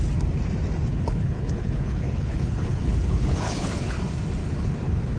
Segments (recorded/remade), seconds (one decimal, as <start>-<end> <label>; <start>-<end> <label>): 0.0-0.9 recorded; 0.9-4.0 remade; 4.0-4.4 recorded; 4.4-5.2 remade